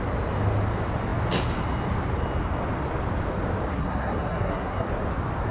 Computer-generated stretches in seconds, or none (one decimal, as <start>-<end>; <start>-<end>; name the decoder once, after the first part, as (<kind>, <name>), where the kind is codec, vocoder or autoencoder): 3.7-4.9 (codec, SNAC)